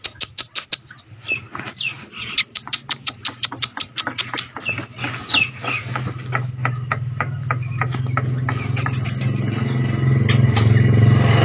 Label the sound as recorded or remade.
recorded